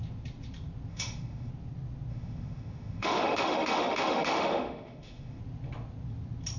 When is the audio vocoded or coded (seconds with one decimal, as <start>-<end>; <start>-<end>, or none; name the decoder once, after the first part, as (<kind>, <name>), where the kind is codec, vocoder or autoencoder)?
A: 0.9-1.5 (autoencoder, DAC-VAE); 2.1-5.4